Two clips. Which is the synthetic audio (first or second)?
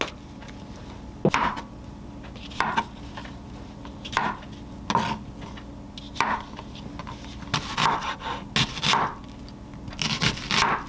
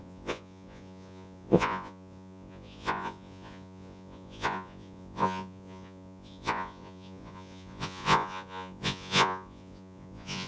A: second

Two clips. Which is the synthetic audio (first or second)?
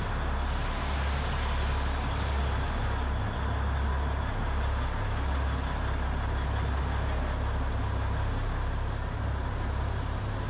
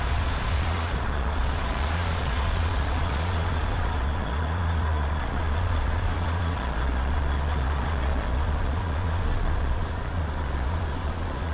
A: second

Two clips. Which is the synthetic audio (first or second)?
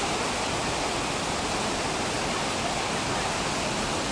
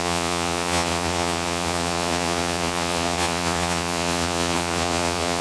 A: second